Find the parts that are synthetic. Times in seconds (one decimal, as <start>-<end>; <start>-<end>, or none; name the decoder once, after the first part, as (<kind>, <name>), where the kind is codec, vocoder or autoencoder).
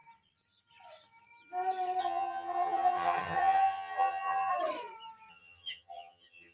2.0-4.5 (vocoder, HiFi-GAN); 5.3-6.5